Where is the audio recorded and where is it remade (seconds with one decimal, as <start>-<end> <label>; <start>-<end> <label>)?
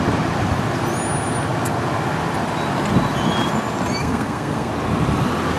0.0-4.0 recorded; 4.0-4.7 remade; 4.7-5.6 recorded